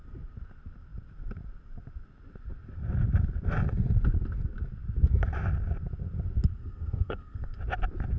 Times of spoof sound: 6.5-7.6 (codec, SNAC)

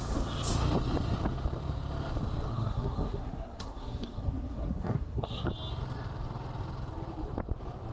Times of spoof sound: 2.5-5.5 (codec, SNAC)

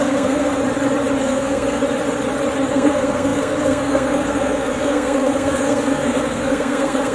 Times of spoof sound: 0.0-0.6 (codec, SNAC); 1.2-1.8; 2.7-7.1

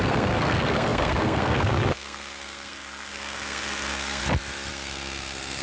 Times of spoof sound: 0.0-4.2 (codec, SNAC); 4.7-5.6

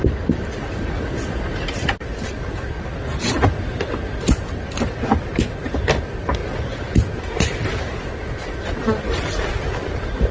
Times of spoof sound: none